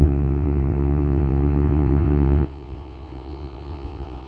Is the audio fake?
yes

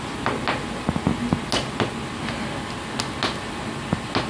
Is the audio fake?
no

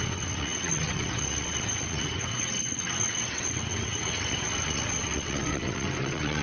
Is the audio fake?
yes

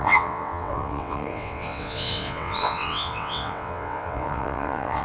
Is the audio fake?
yes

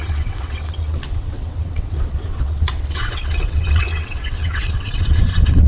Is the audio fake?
yes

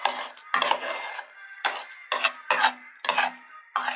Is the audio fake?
no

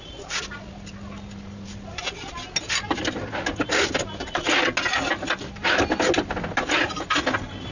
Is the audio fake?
no